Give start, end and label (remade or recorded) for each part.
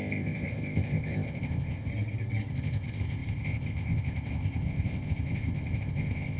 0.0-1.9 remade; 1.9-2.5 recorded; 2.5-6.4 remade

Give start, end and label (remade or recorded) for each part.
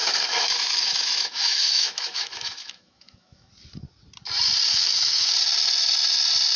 0.0-3.5 remade; 3.5-4.7 recorded; 4.7-5.3 remade; 5.3-6.6 recorded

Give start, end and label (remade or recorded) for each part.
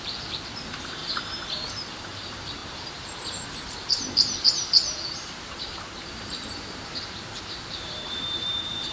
0.0-1.0 remade; 1.0-1.7 recorded; 1.7-8.9 remade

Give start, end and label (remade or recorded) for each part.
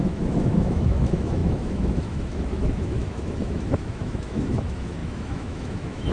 0.0-6.1 remade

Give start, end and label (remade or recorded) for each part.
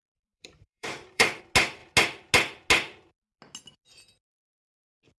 0.0-1.4 remade; 1.4-5.2 recorded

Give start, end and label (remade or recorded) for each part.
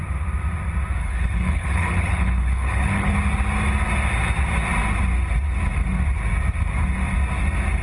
0.0-1.0 recorded; 1.0-3.1 remade; 3.1-7.8 recorded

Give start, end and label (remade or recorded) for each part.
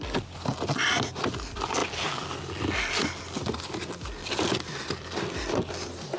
0.0-6.2 recorded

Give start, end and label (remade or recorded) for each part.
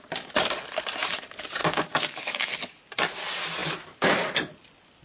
0.0-1.6 recorded; 1.6-2.5 remade; 2.5-5.0 recorded